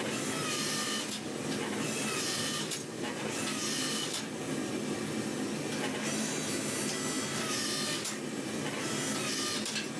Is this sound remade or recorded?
recorded